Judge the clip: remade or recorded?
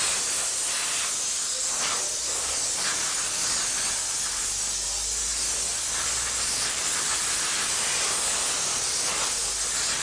recorded